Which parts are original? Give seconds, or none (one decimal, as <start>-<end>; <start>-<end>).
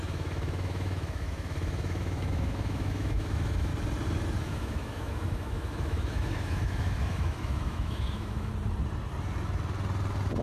3.7-4.4; 8.5-10.4